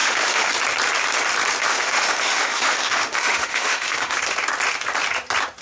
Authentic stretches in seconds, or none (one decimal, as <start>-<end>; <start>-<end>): 0.5-1.7; 4.2-5.6